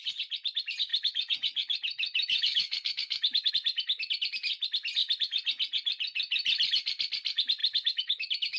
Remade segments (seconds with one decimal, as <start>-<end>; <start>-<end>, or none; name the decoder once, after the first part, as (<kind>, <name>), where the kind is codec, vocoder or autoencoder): 0.9-3.5 (autoencoder, DAC-VAE); 7.6-8.6